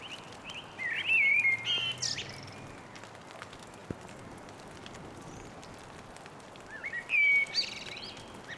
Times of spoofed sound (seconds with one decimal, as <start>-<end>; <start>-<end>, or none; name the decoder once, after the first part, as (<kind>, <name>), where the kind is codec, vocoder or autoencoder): none